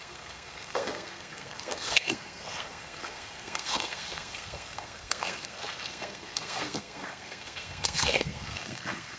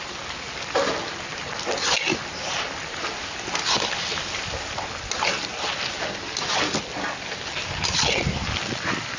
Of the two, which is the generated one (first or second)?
first